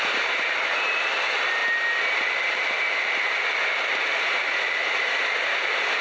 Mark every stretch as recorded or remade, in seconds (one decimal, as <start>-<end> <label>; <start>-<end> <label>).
0.0-6.0 recorded